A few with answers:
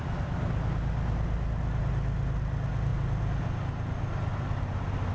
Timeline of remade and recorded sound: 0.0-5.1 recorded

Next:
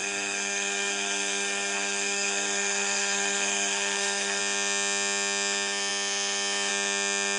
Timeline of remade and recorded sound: 0.0-4.4 remade; 4.4-7.4 recorded

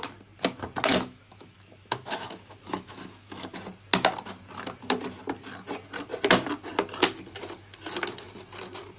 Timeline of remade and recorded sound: 0.0-0.9 recorded; 0.9-3.5 remade; 3.5-9.0 recorded

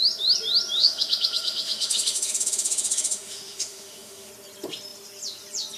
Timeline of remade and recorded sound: 0.0-0.8 recorded; 0.8-4.3 remade; 4.3-5.8 recorded

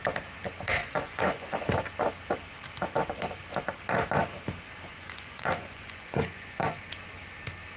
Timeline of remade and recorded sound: 0.0-0.8 recorded; 0.8-1.7 remade; 1.7-4.9 recorded; 4.9-6.8 remade; 6.8-7.8 recorded

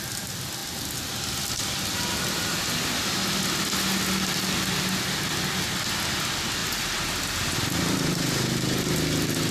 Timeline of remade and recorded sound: 0.0-6.6 recorded; 6.6-7.3 remade; 7.3-9.5 recorded

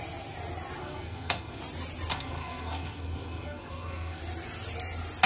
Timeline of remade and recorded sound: 0.0-0.8 recorded; 0.8-1.6 remade; 1.6-2.1 recorded; 2.1-4.2 remade; 4.2-5.3 recorded

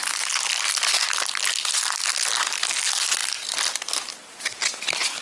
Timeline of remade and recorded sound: 0.0-5.2 recorded